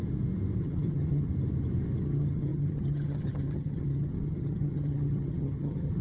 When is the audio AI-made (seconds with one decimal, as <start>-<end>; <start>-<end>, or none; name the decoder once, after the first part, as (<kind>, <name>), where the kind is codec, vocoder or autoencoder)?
0.6-1.3 (vocoder, HiFi-GAN); 2.0-6.0